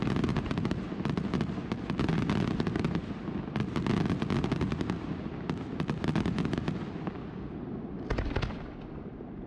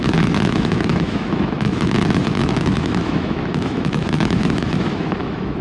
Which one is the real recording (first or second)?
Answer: first